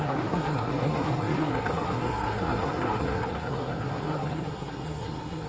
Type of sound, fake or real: fake